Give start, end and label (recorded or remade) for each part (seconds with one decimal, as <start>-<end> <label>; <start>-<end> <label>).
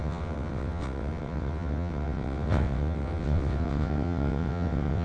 0.0-5.0 remade